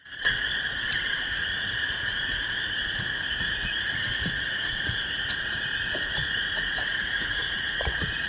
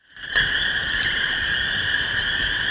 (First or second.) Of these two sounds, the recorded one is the second